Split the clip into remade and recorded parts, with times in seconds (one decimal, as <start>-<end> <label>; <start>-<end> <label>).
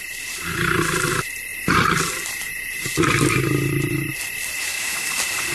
0.0-4.6 recorded; 4.6-5.1 remade; 5.1-5.5 recorded